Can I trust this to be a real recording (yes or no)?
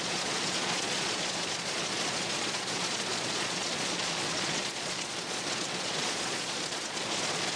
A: no